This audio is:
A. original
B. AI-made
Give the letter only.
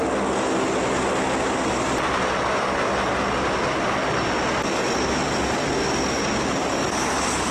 A